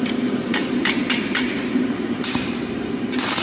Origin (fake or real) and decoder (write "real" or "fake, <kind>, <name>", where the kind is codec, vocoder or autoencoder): fake, vocoder, BigVGAN v2